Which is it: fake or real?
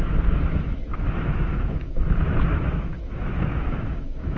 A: fake